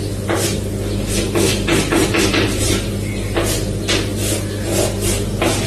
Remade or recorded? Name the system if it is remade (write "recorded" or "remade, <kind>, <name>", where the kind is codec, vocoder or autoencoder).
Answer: recorded